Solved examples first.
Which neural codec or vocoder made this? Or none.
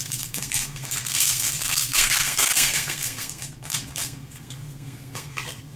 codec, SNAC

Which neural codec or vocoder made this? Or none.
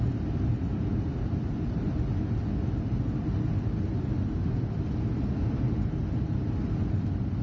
none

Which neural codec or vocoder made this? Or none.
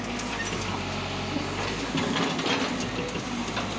none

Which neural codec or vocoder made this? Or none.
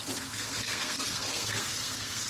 codec, SNAC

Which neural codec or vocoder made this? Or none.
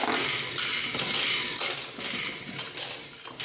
none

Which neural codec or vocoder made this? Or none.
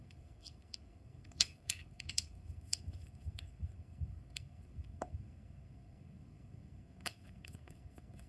codec, SNAC